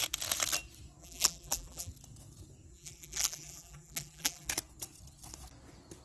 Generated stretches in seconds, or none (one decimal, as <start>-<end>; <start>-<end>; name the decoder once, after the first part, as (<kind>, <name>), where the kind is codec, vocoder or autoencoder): 1.0-1.9 (vocoder, BigVGAN v2); 2.7-4.5